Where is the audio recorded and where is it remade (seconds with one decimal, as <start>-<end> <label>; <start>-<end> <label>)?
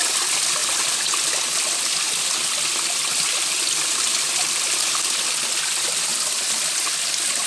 0.0-7.5 recorded